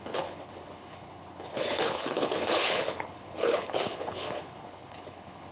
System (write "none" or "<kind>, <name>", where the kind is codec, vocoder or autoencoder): codec, HILCodec